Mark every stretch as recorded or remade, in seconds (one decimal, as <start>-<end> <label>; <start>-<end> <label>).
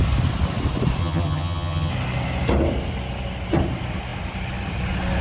0.0-1.0 recorded; 1.0-1.9 remade; 1.9-5.2 recorded